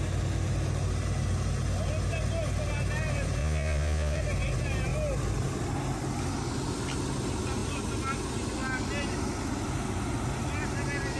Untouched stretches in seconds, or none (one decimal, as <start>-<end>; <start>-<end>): 0.0-3.4; 4.2-11.2